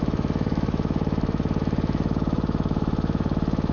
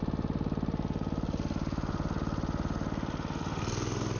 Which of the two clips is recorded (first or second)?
second